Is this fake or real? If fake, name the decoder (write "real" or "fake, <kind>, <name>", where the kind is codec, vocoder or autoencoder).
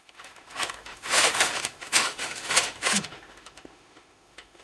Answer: fake, autoencoder, DAC-VAE